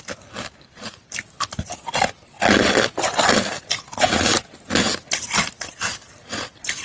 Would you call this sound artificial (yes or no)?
no